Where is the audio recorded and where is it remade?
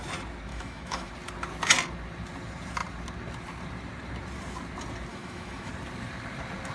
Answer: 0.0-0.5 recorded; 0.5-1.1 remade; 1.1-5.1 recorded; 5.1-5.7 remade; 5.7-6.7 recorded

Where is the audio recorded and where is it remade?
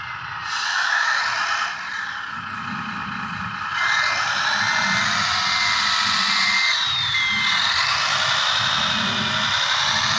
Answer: 0.0-0.7 recorded; 0.7-1.2 remade; 1.2-10.2 recorded